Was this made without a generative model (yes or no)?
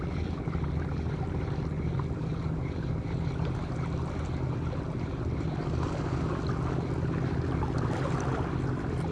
yes